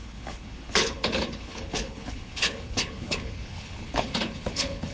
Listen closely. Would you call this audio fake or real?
fake